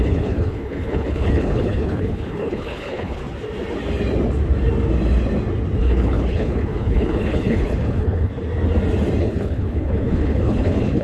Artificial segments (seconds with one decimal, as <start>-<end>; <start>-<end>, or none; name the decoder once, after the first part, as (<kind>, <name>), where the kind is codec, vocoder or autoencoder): 0.0-3.2 (codec, HILCodec); 5.8-8.3; 9.2-11.0